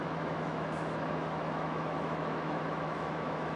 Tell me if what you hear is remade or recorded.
remade